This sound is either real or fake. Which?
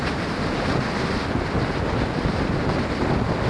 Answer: real